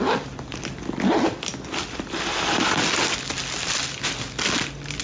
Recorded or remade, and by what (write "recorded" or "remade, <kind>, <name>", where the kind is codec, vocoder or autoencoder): recorded